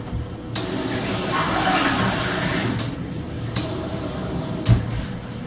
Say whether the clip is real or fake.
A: real